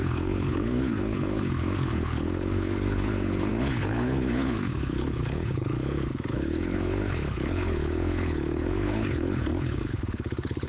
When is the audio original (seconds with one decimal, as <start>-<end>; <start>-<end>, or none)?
none